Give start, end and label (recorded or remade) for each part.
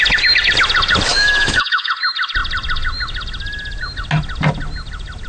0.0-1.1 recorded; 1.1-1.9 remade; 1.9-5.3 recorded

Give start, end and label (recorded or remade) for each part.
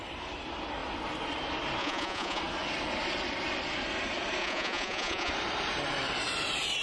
0.0-1.8 recorded; 1.8-2.4 remade; 2.4-4.4 recorded; 4.4-5.3 remade; 5.3-6.8 recorded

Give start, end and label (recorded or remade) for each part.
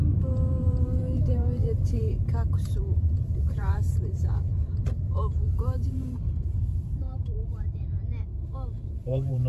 0.0-8.3 remade; 8.3-8.8 recorded; 8.8-9.5 remade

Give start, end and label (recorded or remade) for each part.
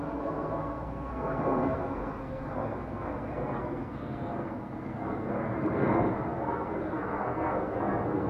0.0-8.3 remade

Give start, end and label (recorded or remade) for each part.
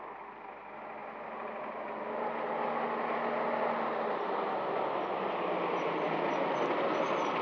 0.0-7.4 recorded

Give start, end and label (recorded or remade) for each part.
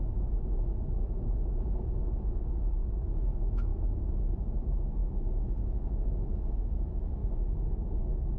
0.0-7.2 remade; 7.2-8.4 recorded